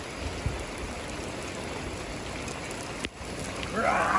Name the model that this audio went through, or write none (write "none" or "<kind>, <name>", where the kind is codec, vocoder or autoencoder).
none